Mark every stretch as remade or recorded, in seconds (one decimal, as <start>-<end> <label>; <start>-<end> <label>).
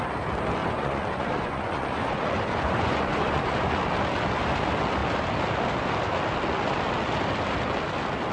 0.0-0.6 recorded; 0.6-3.8 remade; 3.8-8.3 recorded